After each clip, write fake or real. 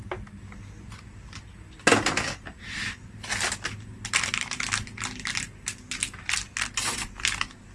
real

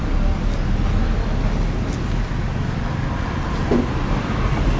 real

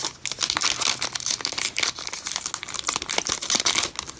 real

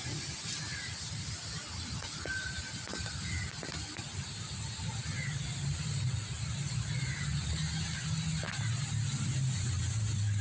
real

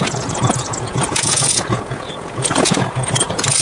fake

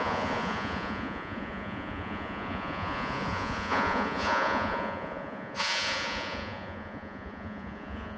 fake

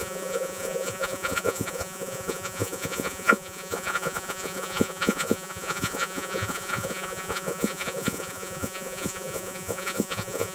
fake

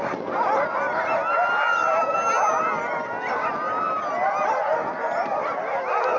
real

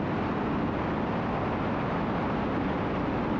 real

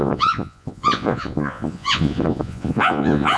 fake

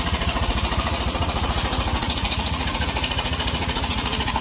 fake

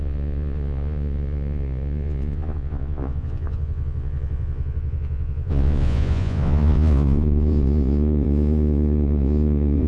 fake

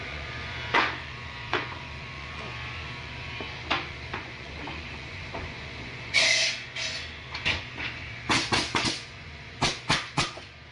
fake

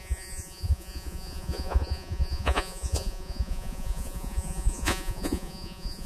fake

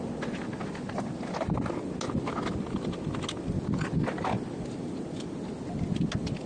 real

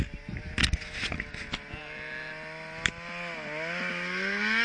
real